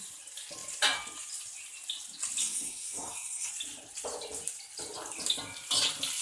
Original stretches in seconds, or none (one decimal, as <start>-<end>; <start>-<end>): 0.0-2.4; 3.5-6.2